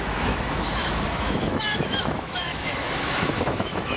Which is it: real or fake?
fake